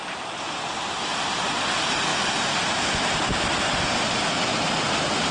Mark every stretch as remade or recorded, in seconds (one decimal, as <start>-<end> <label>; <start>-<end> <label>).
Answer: 0.0-5.3 recorded